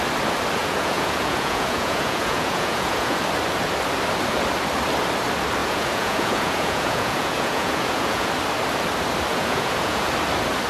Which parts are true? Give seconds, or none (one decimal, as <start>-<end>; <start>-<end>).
0.0-0.6; 3.2-5.6; 8.3-9.3; 10.1-10.7